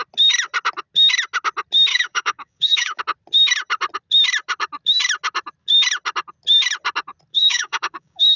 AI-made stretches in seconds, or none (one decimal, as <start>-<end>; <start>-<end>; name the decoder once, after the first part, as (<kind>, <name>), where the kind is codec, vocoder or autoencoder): 1.9-3.0 (codec, DAC); 7.3-8.4